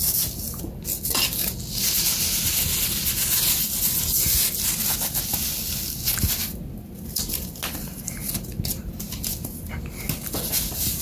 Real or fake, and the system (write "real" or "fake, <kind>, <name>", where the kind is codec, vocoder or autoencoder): real